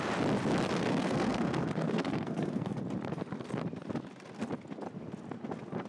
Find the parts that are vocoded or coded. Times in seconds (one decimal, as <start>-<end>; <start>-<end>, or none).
0.9-2.8